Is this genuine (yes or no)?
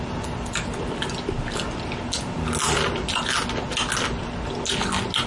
yes